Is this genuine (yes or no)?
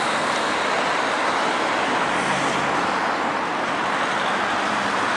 yes